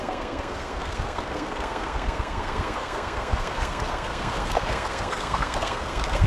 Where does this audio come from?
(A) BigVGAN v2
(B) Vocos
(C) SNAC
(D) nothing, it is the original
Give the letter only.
C